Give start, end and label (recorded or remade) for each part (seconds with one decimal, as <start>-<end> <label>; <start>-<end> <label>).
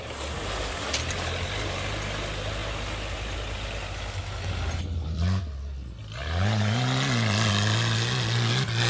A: 0.0-8.9 recorded